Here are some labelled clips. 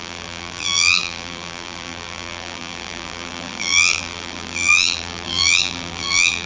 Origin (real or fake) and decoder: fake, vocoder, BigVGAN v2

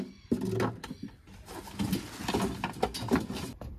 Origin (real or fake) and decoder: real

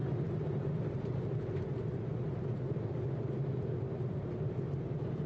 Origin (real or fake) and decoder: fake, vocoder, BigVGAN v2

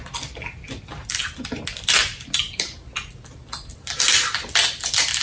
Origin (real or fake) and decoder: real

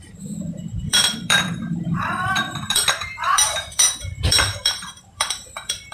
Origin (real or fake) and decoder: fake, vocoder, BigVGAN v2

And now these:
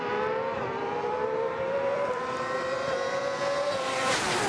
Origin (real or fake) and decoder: fake, vocoder, BigVGAN v2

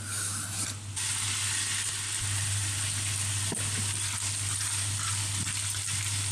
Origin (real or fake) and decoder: real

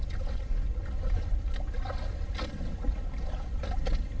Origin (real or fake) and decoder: real